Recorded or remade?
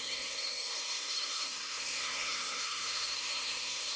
remade